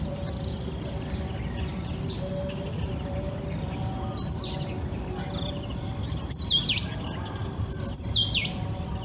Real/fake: real